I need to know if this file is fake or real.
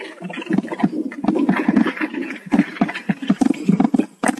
real